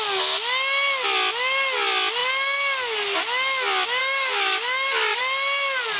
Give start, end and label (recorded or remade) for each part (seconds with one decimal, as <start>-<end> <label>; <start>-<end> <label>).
0.0-4.0 recorded; 4.0-5.2 remade; 5.2-6.0 recorded